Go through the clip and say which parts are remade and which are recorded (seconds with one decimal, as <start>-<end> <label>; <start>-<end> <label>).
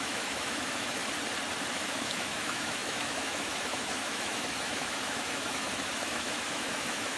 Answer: 0.0-1.0 remade; 1.0-1.7 recorded; 1.7-7.2 remade